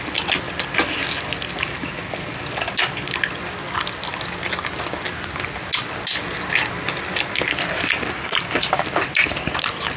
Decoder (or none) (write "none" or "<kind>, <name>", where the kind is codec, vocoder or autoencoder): none